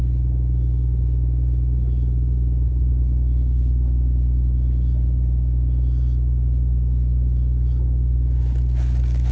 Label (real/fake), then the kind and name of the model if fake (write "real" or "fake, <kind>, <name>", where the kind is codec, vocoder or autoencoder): real